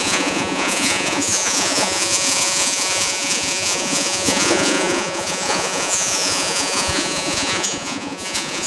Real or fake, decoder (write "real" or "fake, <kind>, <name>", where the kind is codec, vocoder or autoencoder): fake, vocoder, Vocos